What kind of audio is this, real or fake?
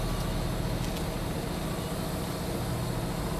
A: real